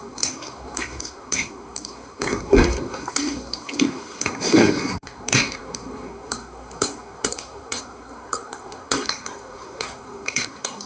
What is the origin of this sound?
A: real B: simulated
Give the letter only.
B